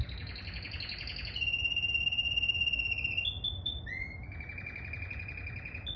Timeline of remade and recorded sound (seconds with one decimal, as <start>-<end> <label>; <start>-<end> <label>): 0.0-6.0 recorded